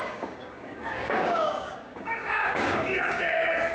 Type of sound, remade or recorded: remade